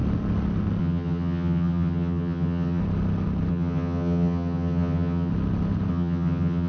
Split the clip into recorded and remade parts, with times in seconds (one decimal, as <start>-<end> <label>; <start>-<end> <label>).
0.0-0.8 recorded; 0.8-2.8 remade; 2.8-3.5 recorded; 3.5-5.3 remade; 5.3-5.9 recorded; 5.9-6.7 remade